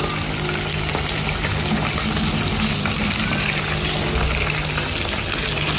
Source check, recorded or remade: recorded